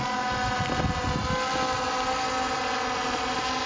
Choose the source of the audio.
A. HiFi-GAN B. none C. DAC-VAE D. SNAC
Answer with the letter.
B